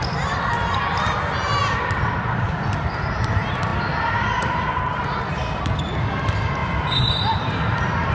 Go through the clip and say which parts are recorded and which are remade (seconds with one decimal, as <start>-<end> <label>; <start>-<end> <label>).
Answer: 0.0-8.1 recorded